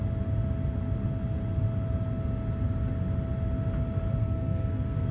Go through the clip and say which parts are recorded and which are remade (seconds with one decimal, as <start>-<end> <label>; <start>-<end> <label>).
0.0-4.2 recorded; 4.2-5.1 remade